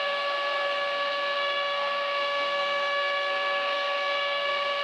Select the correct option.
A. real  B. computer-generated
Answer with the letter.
B